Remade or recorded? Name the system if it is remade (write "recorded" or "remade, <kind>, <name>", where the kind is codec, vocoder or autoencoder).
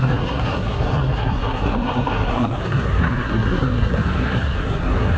remade, codec, SNAC